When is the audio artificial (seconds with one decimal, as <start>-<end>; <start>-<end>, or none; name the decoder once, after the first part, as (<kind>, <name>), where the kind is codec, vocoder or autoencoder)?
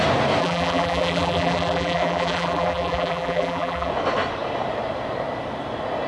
0.4-3.9 (vocoder, BigVGAN v2)